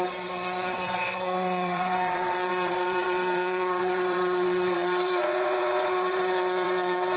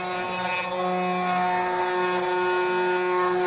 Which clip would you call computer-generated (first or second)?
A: first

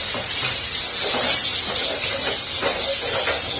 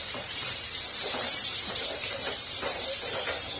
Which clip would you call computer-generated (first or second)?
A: second